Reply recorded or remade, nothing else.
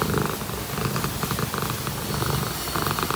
recorded